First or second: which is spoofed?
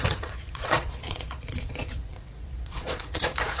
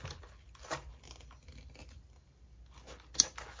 first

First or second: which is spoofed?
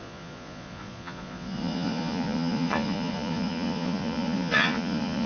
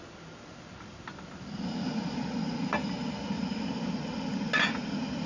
first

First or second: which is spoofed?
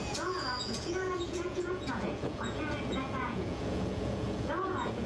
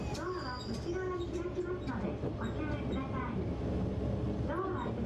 first